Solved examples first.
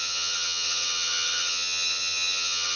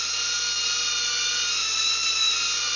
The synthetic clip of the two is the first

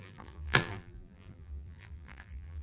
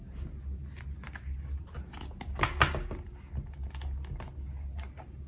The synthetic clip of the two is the first